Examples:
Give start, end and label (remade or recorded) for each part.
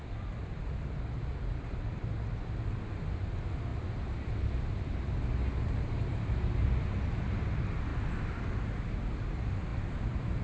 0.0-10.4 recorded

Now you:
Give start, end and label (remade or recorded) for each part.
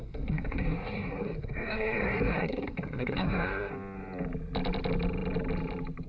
0.0-3.7 remade; 3.7-6.1 recorded